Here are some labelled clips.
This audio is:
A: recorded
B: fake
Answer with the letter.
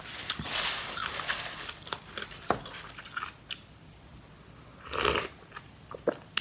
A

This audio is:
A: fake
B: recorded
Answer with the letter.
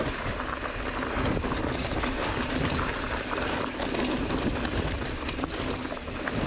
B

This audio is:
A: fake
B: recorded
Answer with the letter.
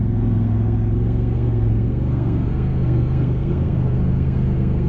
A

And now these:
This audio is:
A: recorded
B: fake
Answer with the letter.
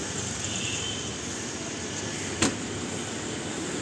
A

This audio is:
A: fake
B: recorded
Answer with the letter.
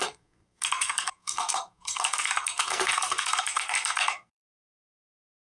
A